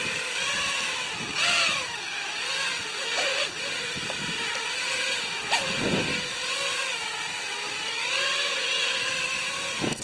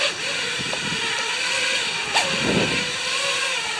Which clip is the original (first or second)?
first